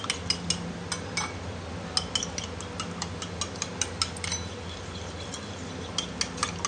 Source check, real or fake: real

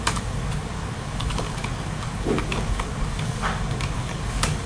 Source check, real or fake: fake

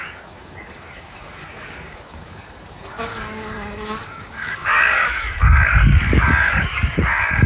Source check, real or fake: fake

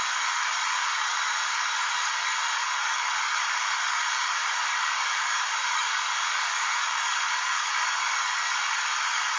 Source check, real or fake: fake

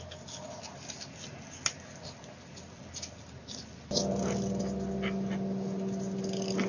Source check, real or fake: real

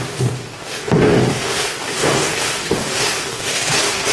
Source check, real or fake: fake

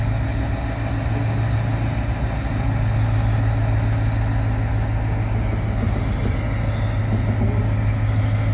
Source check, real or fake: real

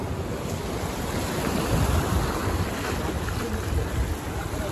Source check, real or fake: real